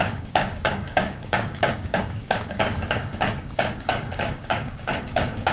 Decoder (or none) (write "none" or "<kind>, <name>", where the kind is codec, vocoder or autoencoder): codec, DAC